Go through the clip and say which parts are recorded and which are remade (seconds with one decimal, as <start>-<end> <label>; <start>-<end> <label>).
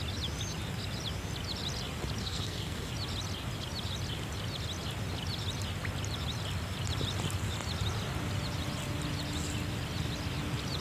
0.0-2.2 recorded; 2.2-2.9 remade; 2.9-10.8 recorded